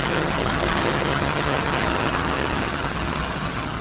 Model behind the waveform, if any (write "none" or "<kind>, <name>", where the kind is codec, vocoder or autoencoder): vocoder, HiFi-GAN